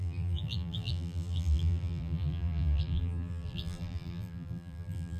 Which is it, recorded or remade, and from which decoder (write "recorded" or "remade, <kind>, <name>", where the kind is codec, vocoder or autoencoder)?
remade, vocoder, BigVGAN v2